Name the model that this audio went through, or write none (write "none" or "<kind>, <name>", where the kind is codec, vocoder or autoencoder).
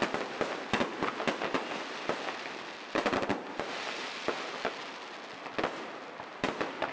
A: none